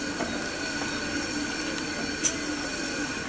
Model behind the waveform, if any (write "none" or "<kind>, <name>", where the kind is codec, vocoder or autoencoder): none